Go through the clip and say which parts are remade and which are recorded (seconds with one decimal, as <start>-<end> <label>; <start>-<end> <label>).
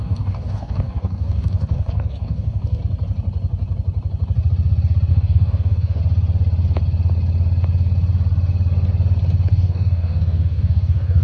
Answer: 0.0-2.8 remade; 2.8-5.1 recorded; 5.1-6.0 remade; 6.0-9.5 recorded; 9.5-11.2 remade